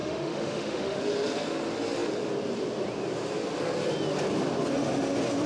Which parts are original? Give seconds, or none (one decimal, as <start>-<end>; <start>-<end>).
1.0-5.5